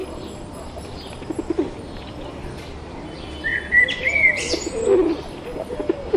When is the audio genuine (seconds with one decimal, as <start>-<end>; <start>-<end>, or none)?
0.0-6.2